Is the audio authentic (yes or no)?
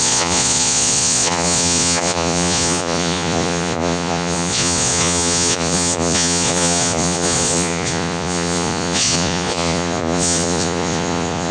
no